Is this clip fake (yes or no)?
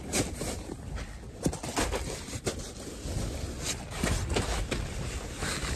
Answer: no